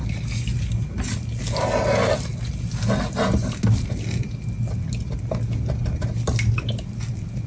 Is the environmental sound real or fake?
real